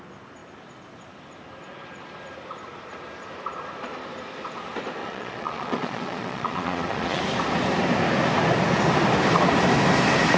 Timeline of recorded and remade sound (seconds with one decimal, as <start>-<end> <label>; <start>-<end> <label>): 0.0-5.0 recorded; 5.0-7.2 remade; 7.2-10.4 recorded